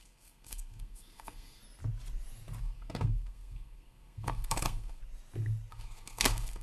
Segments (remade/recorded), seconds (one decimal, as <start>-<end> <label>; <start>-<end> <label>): 0.0-1.6 remade; 1.6-2.6 recorded; 2.6-5.0 remade; 5.0-5.7 recorded; 5.7-6.6 remade